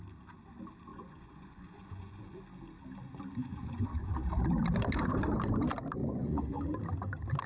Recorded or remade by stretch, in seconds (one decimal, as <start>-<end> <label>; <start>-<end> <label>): 0.0-0.9 recorded; 0.9-2.4 remade; 2.4-3.4 recorded; 3.4-4.1 remade; 4.1-6.0 recorded; 6.0-6.6 remade; 6.6-7.5 recorded